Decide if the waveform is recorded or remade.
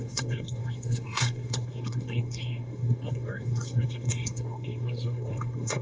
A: remade